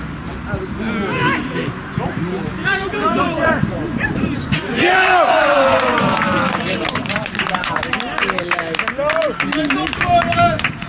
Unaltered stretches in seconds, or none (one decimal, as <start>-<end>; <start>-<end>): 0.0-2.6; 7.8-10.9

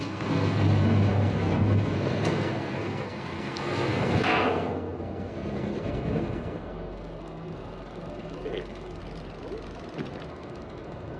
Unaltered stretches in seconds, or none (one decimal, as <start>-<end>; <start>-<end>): 9.0-10.3

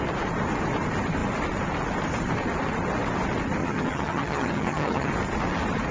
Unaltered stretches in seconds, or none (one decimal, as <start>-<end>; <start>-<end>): 0.0-3.6; 5.1-5.9

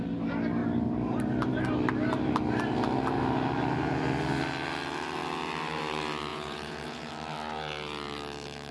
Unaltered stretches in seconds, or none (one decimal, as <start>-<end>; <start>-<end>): 0.0-6.3; 7.1-8.7

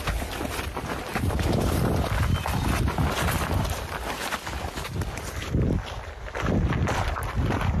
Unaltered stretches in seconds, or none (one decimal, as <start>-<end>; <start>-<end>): 0.0-7.8